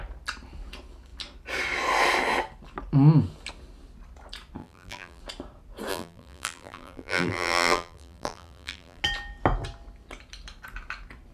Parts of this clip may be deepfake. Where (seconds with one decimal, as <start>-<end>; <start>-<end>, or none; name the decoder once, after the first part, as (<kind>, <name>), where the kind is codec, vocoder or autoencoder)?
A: 4.6-5.2 (vocoder, BigVGAN v2); 5.9-9.0